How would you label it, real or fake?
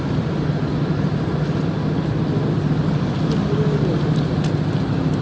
real